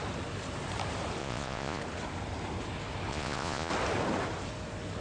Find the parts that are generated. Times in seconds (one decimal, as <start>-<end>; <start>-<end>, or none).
1.2-1.8; 3.1-3.7

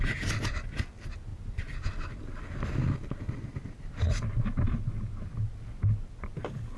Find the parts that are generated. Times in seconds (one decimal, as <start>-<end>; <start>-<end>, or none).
none

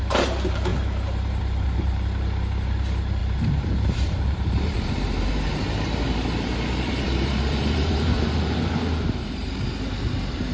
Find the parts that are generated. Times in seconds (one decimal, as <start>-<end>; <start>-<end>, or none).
0.0-10.5

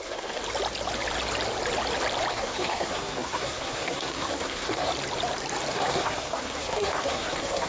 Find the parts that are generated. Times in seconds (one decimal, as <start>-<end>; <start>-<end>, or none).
0.0-0.4; 2.3-4.9; 5.7-7.7